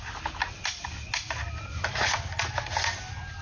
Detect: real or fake real